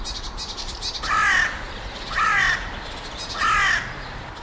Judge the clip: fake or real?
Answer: real